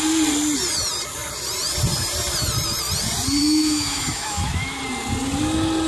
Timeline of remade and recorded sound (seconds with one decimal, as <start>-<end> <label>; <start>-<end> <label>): 0.0-3.4 recorded; 3.4-4.8 remade; 4.8-5.9 recorded

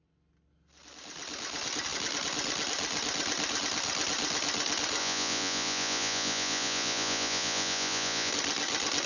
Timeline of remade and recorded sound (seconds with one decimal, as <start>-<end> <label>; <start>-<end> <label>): 0.0-5.0 recorded; 5.0-8.3 remade; 8.3-9.1 recorded

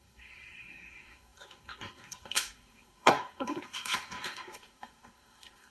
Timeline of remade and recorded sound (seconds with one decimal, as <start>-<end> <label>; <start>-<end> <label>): 0.0-5.7 remade

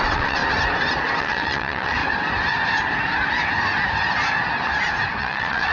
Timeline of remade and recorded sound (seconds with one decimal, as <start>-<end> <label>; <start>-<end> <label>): 0.0-0.4 remade; 0.4-1.2 recorded; 1.2-2.0 remade; 2.0-5.2 recorded; 5.2-5.7 remade

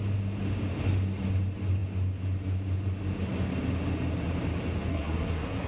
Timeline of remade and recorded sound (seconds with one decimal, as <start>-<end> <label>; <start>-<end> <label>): 0.0-4.9 recorded; 4.9-5.7 remade